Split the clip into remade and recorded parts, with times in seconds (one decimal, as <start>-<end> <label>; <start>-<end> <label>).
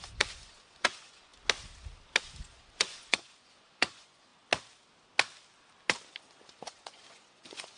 0.0-1.3 remade; 1.3-2.2 recorded; 2.2-4.3 remade; 4.3-6.2 recorded; 6.2-7.8 remade